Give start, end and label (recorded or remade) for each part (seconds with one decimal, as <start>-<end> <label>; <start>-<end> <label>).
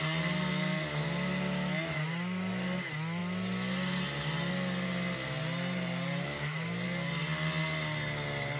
0.0-8.6 recorded